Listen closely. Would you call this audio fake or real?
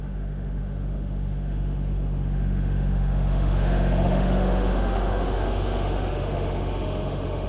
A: fake